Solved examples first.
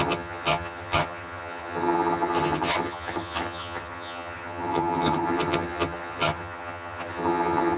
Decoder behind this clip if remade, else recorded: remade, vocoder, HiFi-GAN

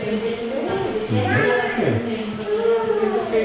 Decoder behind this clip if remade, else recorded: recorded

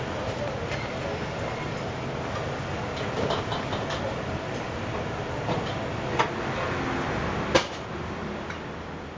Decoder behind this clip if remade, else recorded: recorded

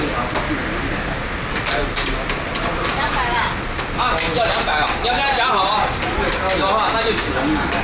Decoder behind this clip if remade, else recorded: recorded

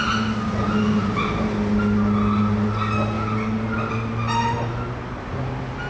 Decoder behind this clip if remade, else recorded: recorded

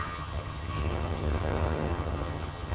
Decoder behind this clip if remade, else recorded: remade, vocoder, HiFi-GAN